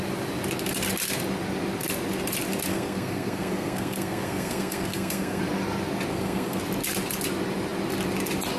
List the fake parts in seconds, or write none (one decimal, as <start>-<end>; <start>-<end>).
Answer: 2.7-5.4; 6.1-6.6